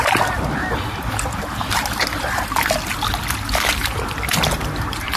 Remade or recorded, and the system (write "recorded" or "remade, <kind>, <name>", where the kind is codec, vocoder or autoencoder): recorded